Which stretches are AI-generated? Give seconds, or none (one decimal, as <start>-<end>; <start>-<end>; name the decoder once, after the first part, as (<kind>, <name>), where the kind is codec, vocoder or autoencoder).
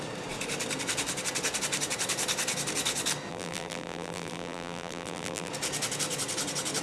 3.3-5.5 (vocoder, BigVGAN v2)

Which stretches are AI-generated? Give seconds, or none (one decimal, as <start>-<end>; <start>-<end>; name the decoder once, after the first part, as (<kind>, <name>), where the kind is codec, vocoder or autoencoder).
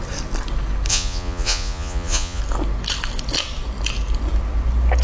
0.9-2.4 (vocoder, Vocos)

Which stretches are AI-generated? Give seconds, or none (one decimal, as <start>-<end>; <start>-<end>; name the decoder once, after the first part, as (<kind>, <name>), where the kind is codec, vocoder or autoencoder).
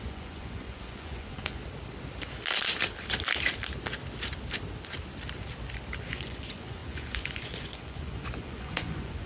0.0-1.6 (vocoder, Vocos); 6.0-9.3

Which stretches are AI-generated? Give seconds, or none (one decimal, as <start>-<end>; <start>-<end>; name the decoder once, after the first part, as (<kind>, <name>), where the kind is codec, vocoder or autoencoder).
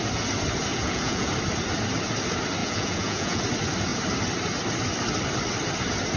0.7-1.3 (vocoder, Vocos); 2.6-3.4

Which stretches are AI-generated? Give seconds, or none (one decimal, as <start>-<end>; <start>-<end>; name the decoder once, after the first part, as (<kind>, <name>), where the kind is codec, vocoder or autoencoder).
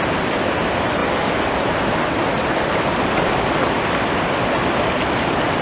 none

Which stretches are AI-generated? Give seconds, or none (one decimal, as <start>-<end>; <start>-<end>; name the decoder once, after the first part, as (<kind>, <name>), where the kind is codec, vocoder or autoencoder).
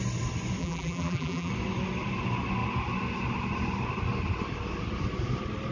0.6-1.5 (vocoder, BigVGAN v2)